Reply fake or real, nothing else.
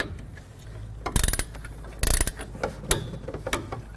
real